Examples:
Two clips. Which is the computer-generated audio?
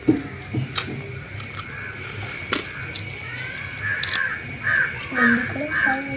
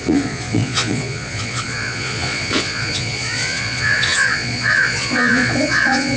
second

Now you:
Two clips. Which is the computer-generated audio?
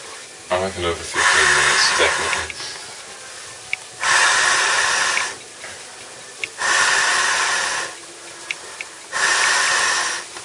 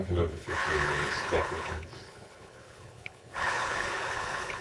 second